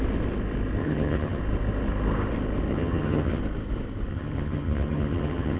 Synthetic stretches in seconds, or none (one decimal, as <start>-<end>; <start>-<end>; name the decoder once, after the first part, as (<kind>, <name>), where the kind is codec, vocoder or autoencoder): 0.8-1.4 (vocoder, HiFi-GAN); 2.7-3.4; 4.1-5.6